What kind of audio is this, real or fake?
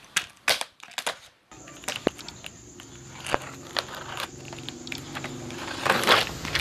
real